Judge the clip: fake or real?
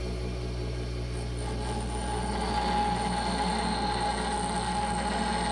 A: real